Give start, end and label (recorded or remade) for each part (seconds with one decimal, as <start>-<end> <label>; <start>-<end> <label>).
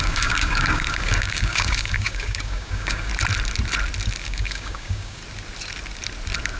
0.0-3.1 remade; 3.1-4.2 recorded; 4.2-5.2 remade; 5.2-6.6 recorded